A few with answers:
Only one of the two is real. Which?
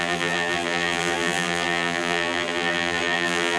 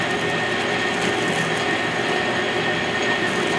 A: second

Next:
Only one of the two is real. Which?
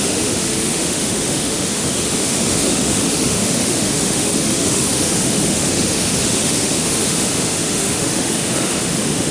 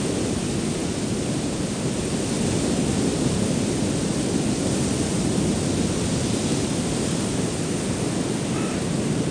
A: second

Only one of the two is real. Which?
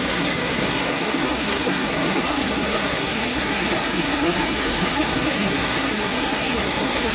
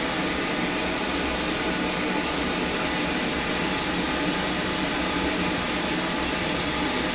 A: second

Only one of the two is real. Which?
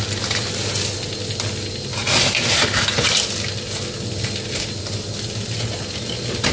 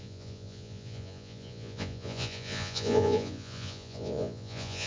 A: first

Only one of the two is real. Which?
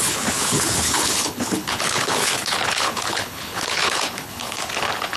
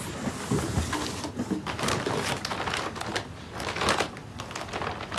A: second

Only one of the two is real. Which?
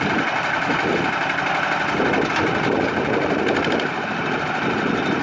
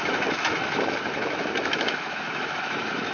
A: first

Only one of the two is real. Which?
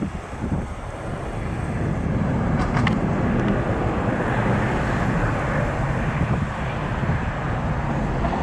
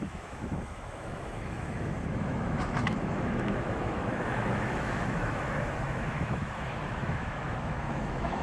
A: first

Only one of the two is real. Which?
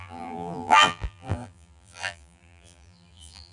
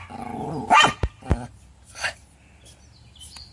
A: second